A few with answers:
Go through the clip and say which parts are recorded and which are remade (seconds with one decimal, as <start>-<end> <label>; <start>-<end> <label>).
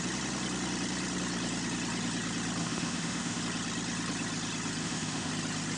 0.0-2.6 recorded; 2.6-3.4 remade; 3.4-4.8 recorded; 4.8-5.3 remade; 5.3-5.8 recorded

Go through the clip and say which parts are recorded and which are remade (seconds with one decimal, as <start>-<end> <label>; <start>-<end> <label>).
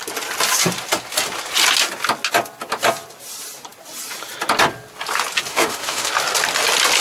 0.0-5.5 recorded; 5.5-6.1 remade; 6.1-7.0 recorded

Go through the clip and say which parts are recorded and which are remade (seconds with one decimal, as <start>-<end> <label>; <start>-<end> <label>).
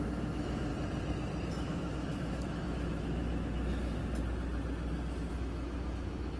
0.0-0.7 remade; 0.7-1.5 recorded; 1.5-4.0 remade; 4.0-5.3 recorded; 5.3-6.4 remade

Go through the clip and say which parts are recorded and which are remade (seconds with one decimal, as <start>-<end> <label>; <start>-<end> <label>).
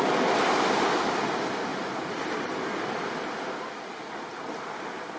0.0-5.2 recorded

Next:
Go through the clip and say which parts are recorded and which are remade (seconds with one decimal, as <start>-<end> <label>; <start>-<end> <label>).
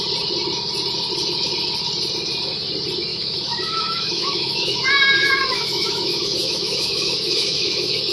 0.0-3.1 recorded; 3.1-8.1 remade